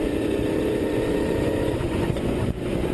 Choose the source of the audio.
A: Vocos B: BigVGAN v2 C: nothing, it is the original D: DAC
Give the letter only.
A